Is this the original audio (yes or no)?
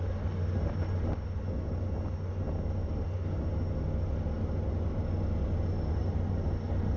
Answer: yes